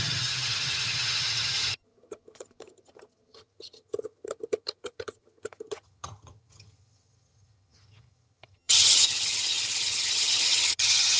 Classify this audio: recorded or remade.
remade